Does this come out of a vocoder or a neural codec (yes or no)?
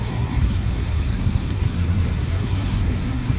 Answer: yes